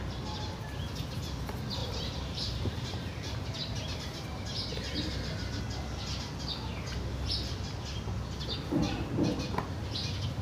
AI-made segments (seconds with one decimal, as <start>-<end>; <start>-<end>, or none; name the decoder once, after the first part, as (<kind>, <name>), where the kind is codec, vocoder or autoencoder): 1.8-5.6 (vocoder, BigVGAN v2)